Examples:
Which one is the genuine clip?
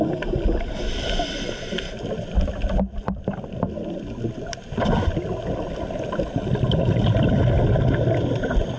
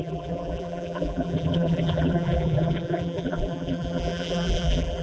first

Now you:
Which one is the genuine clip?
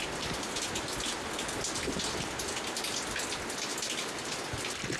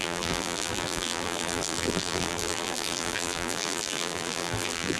first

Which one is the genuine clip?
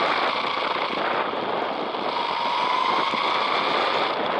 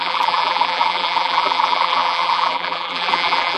first